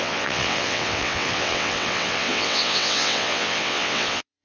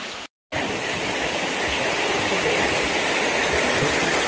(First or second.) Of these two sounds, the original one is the second